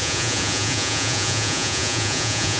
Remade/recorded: remade